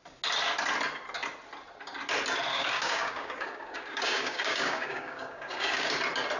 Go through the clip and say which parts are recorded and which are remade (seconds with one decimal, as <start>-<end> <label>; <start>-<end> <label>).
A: 0.0-2.5 recorded; 2.5-5.9 remade; 5.9-6.4 recorded